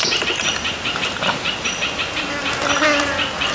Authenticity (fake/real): real